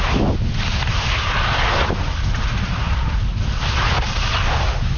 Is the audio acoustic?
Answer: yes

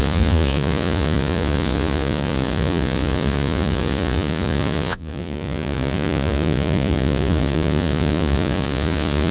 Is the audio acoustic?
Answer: no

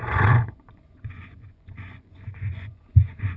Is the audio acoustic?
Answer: no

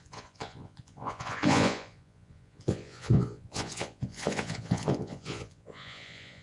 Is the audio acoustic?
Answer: no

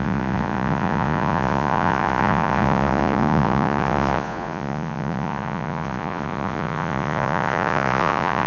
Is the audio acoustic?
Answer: no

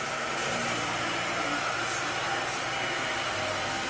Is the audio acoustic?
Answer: yes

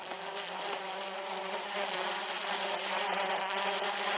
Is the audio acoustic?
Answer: yes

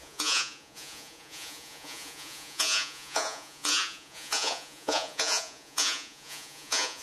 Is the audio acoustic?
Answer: no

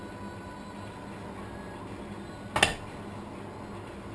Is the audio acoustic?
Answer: yes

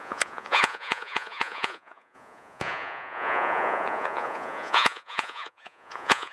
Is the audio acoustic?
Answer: no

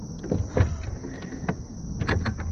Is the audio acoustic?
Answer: yes